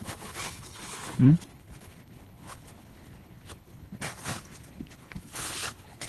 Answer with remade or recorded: remade